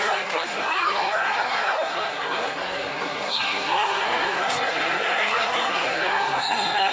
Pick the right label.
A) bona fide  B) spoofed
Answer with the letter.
B